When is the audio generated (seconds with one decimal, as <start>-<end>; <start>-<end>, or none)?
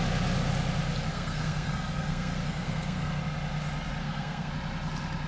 1.1-3.2; 4.0-4.5